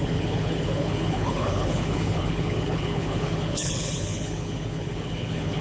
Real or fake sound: fake